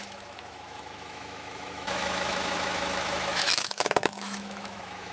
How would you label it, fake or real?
fake